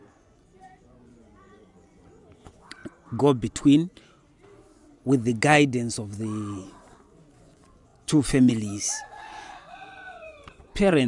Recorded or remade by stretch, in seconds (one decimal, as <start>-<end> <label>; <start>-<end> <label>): 0.0-2.8 remade; 2.8-7.3 recorded; 7.3-11.1 remade